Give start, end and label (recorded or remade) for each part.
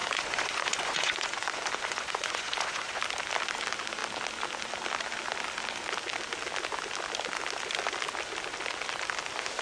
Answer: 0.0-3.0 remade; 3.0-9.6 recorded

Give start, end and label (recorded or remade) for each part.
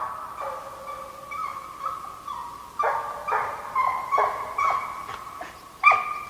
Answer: 0.0-6.3 recorded